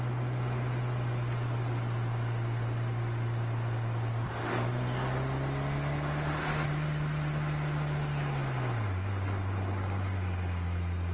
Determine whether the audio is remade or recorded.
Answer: recorded